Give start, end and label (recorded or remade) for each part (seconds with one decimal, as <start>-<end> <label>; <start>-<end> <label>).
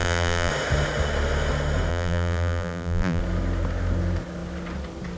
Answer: 0.0-0.5 remade; 0.5-1.9 recorded; 1.9-3.2 remade; 3.2-5.2 recorded